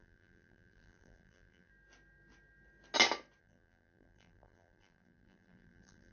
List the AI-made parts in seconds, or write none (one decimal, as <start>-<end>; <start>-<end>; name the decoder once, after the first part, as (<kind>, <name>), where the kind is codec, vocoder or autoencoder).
0.0-1.7 (vocoder, BigVGAN v2); 3.4-6.1